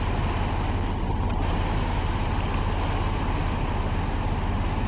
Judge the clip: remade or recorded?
recorded